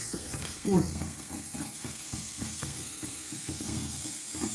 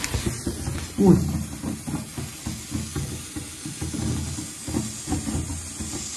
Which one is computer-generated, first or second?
first